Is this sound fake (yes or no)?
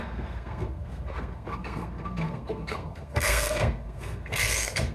yes